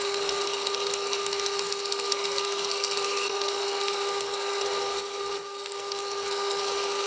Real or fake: fake